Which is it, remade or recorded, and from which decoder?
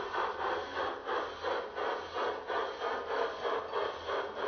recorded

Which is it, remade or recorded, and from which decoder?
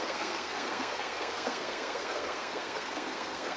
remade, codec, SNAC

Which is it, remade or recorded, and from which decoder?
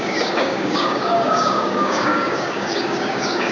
remade, codec, DAC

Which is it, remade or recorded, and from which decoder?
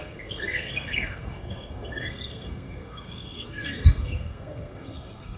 remade, codec, SNAC